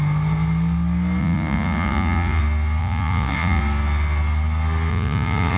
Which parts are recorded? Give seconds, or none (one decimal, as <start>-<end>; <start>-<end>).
0.0-1.2; 2.4-2.8; 3.6-4.9